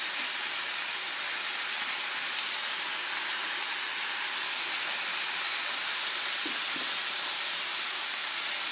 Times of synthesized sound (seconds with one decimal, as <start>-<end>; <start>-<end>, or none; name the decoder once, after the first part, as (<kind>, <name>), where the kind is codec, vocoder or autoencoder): none